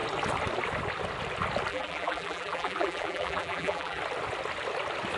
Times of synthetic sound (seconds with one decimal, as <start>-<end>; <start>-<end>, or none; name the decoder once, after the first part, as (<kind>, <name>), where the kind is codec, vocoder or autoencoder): 1.7-4.0 (vocoder, BigVGAN v2)